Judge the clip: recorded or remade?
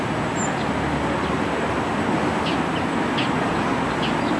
recorded